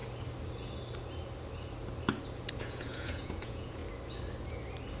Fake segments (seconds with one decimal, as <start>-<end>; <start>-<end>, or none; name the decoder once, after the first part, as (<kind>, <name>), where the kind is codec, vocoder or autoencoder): 2.6-3.8 (vocoder, Vocos)

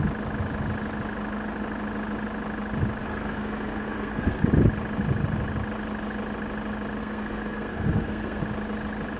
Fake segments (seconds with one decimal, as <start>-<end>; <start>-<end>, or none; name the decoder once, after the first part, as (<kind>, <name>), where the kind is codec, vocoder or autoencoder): 3.0-4.4 (codec, SNAC); 7.0-8.4

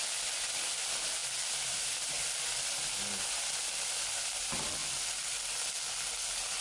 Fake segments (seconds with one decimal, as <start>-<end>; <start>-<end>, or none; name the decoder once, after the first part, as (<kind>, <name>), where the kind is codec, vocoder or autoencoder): 0.0-4.8 (vocoder, BigVGAN v2)

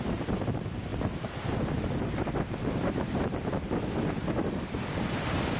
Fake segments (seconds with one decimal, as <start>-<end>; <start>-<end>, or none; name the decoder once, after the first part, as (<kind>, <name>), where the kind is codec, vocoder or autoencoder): 0.0-5.6 (vocoder, BigVGAN v2)

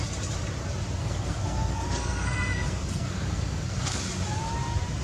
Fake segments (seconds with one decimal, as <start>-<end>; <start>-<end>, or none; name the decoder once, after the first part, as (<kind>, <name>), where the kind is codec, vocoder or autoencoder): 1.0-4.0 (codec, SNAC)

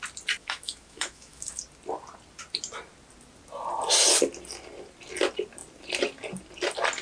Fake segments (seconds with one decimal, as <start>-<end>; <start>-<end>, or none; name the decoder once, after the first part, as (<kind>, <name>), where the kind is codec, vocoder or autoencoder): 0.4-1.6 (autoencoder, DAC-VAE)